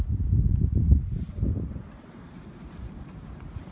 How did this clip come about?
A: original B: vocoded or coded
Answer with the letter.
A